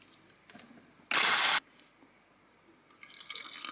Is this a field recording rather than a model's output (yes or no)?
yes